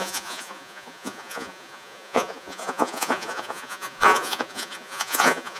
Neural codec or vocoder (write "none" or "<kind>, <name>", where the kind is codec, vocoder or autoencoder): vocoder, Vocos